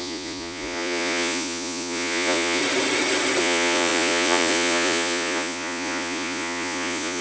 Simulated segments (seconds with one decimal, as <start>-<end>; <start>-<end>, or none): 0.0-2.6; 3.4-7.2